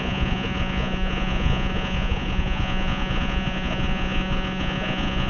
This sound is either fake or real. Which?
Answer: fake